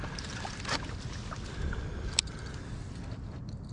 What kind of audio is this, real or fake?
real